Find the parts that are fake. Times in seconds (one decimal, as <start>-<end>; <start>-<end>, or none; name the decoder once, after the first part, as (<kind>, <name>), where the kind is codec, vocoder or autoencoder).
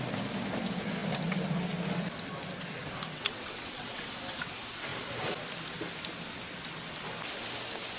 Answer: 3.1-4.1 (vocoder, WaveNeXt)